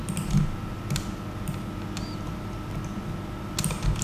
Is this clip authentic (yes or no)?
yes